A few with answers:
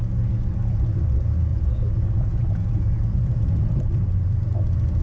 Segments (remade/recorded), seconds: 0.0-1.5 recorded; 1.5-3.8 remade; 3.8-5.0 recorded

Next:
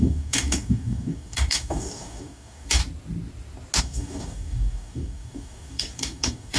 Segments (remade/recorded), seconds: 0.0-2.8 remade; 2.8-3.8 recorded; 3.8-6.6 remade